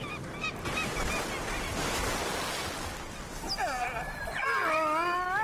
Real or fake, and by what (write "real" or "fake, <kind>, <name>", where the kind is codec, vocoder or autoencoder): real